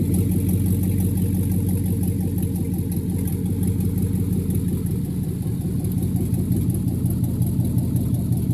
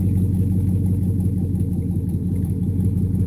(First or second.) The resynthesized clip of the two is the second